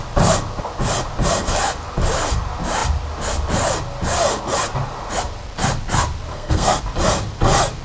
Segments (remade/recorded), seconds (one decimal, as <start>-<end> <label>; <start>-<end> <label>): 0.0-6.3 recorded; 6.3-6.8 remade; 6.8-7.8 recorded